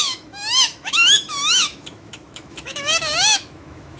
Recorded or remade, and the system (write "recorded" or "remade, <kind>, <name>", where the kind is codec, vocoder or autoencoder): remade, autoencoder, DAC-VAE